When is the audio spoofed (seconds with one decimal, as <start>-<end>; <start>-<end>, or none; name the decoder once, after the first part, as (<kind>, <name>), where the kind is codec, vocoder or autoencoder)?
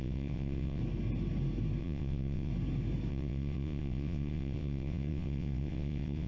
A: 0.0-0.8 (vocoder, WaveNeXt); 1.8-2.5; 3.1-6.3